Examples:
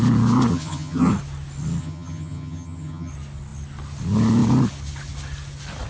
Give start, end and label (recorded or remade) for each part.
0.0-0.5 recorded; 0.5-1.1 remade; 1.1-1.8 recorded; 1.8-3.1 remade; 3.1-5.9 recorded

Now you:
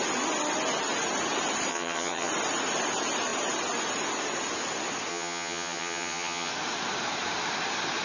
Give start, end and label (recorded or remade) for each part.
0.0-1.7 recorded; 1.7-2.3 remade; 2.3-5.1 recorded; 5.1-6.5 remade; 6.5-8.0 recorded

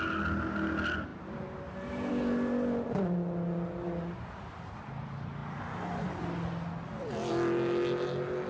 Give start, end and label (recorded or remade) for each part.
0.0-8.5 recorded